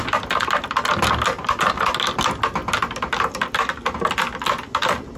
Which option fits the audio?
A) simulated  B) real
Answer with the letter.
B